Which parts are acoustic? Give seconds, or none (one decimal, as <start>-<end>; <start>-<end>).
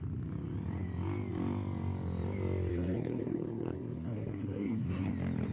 0.0-2.7; 5.1-5.5